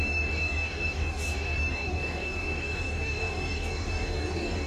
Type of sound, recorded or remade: remade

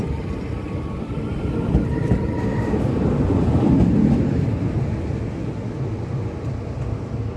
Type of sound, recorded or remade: recorded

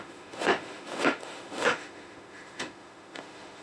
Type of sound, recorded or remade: remade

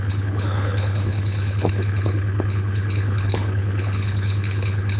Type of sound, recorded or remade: remade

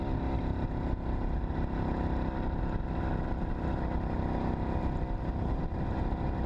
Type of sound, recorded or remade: recorded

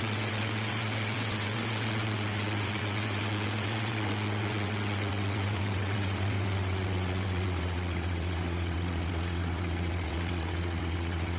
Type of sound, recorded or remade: remade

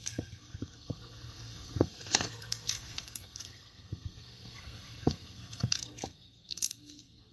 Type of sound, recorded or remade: remade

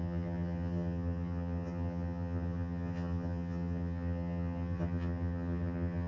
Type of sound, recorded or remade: remade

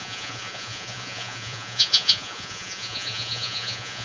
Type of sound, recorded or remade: remade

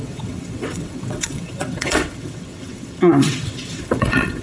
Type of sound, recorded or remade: remade